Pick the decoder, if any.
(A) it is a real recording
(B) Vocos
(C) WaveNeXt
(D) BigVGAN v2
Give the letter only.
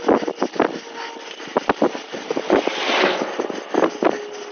A